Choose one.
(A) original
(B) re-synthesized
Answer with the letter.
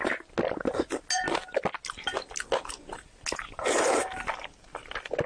A